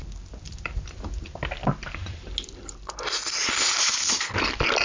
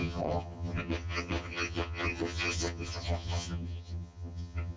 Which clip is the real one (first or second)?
first